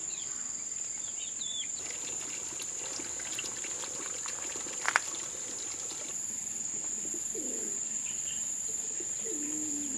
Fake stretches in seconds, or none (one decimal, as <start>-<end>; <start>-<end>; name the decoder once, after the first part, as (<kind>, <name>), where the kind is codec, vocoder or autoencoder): 0.0-0.6 (vocoder, BigVGAN v2)